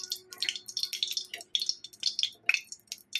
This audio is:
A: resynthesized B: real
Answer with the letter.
B